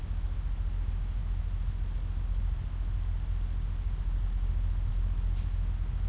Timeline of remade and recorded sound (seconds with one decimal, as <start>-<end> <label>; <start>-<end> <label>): 0.0-6.1 recorded